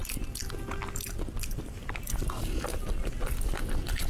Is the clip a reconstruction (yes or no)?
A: no